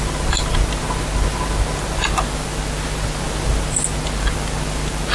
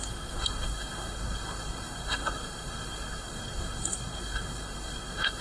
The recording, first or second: first